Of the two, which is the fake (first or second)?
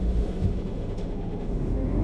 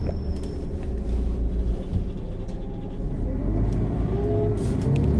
first